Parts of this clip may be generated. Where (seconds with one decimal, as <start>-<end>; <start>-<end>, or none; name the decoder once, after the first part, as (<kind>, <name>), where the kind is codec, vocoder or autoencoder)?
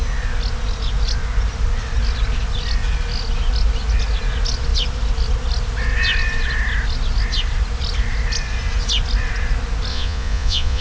9.9-10.8 (vocoder, Vocos)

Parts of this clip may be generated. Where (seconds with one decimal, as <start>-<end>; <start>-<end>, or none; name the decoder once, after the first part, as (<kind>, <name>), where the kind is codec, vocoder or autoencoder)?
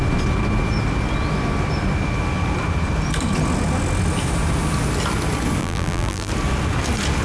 5.6-6.3 (vocoder, BigVGAN v2)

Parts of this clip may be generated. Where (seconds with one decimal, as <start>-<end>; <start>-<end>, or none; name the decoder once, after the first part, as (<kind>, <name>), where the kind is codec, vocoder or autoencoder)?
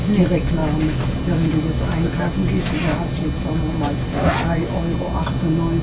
none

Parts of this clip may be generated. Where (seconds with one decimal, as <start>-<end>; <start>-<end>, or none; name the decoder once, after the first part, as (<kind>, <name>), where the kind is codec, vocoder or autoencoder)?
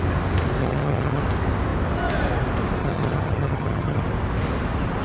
0.6-1.2 (vocoder, HiFi-GAN); 2.8-4.0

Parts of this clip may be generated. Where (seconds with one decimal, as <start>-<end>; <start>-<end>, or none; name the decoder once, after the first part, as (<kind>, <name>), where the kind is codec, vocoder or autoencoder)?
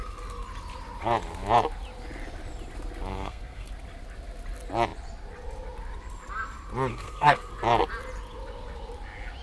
3.1-3.7 (codec, SNAC); 6.9-7.5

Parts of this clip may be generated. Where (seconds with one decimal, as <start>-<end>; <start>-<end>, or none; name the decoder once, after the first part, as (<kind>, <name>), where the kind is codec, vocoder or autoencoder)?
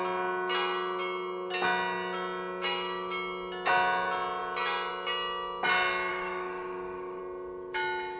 6.1-7.2 (codec, DAC)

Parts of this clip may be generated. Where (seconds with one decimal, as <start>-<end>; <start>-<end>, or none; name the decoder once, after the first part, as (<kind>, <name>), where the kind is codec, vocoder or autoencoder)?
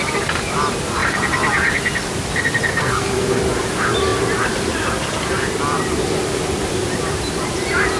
2.7-3.4 (codec, SNAC)